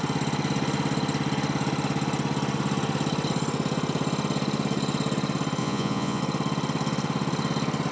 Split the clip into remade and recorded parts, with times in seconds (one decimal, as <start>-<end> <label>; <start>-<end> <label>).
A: 0.0-5.6 recorded; 5.6-6.2 remade; 6.2-7.9 recorded